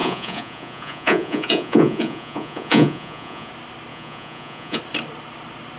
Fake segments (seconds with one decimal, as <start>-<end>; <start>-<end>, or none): 0.0-3.5; 3.9-4.8